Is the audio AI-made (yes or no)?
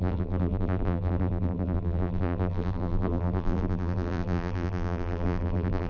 yes